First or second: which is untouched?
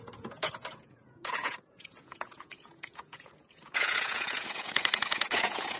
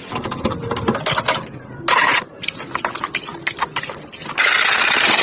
second